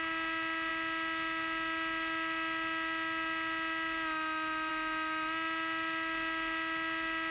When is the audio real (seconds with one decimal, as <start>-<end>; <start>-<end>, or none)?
0.0-7.3